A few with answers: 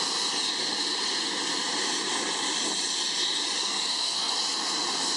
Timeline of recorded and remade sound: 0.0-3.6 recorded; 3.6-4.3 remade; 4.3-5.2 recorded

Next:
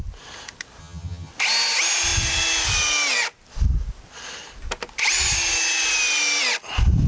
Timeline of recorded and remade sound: 0.0-0.8 recorded; 0.8-1.3 remade; 1.3-7.1 recorded

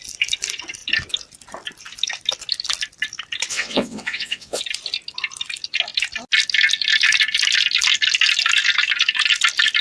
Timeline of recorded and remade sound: 0.0-3.5 recorded; 3.5-4.6 remade; 4.6-9.8 recorded

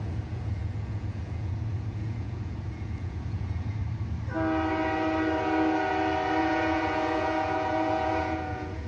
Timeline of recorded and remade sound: 0.0-3.8 remade; 3.8-6.4 recorded; 6.4-8.9 remade

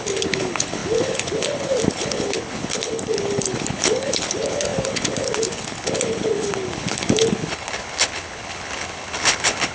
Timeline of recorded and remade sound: 0.0-9.7 remade

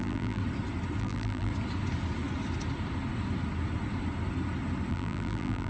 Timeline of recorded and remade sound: 0.0-0.4 remade; 0.4-1.0 recorded; 1.0-1.5 remade; 1.5-4.9 recorded; 4.9-5.7 remade